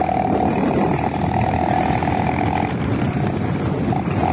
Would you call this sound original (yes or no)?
yes